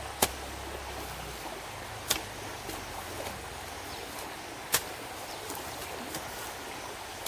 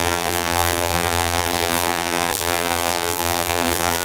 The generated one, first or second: second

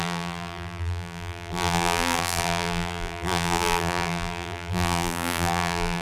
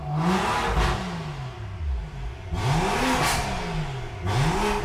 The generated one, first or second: first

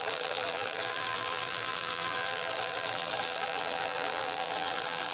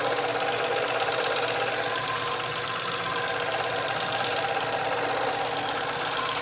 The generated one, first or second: first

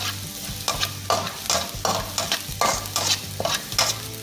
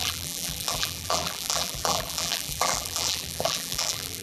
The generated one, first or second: second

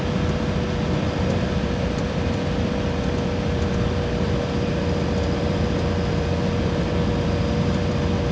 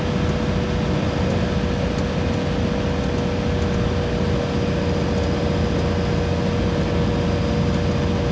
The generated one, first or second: first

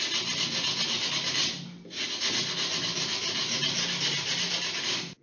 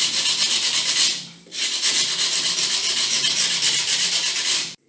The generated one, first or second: second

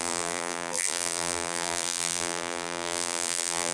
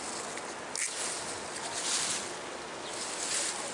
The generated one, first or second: first